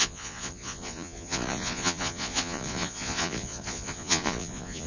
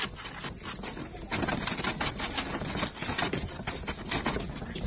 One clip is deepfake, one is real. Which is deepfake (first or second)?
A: first